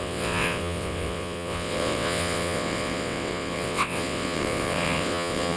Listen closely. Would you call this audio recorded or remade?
remade